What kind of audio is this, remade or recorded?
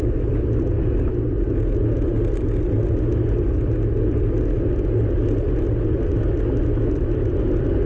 recorded